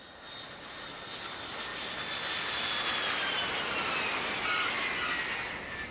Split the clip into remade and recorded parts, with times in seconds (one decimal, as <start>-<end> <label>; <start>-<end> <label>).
0.0-5.9 recorded